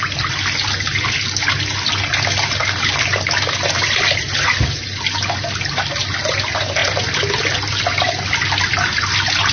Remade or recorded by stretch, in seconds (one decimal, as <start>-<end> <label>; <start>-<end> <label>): 0.0-9.5 recorded